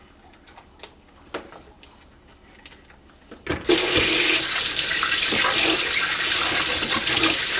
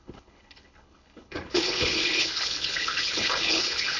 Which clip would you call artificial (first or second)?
second